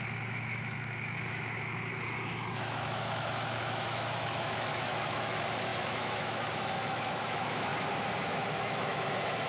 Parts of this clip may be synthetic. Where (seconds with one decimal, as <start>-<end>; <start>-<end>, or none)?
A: 0.0-7.7; 8.3-9.5